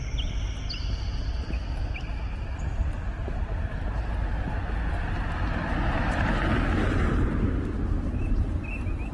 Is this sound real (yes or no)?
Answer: yes